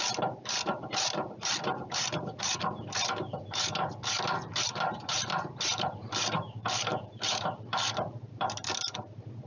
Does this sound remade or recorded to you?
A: remade